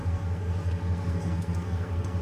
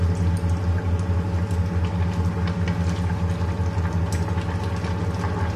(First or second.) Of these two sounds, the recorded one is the second